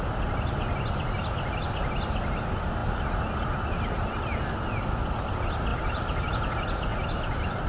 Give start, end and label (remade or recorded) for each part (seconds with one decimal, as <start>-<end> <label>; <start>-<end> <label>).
0.0-7.7 recorded